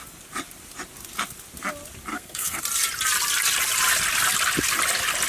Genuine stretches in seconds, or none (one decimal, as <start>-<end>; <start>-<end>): 0.0-2.1; 2.6-5.3